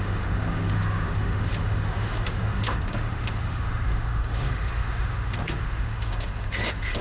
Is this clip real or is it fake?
fake